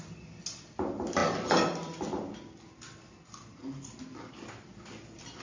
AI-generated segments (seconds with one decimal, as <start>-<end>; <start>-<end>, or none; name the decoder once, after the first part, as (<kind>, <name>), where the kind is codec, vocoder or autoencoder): none